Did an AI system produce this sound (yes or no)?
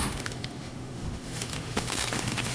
yes